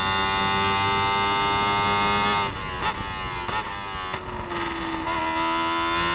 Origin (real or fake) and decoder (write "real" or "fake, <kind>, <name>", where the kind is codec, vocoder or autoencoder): real